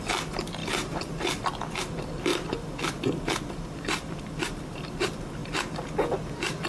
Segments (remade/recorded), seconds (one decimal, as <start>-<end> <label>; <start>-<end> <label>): 0.0-0.6 recorded; 0.6-1.1 remade; 1.1-2.3 recorded; 2.3-4.9 remade; 4.9-6.7 recorded